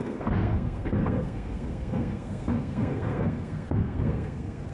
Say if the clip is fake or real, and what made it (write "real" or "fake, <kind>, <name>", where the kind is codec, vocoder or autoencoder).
fake, codec, SNAC